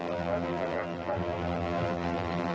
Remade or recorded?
remade